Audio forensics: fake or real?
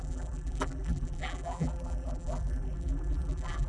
fake